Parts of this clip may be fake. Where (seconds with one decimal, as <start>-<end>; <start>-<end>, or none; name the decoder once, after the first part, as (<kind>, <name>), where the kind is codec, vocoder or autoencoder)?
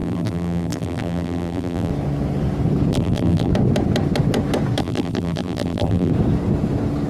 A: 0.0-1.9 (vocoder, BigVGAN v2); 2.9-3.5; 4.8-6.1